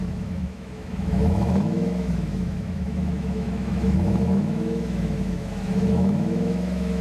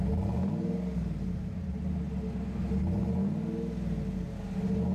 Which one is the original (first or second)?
second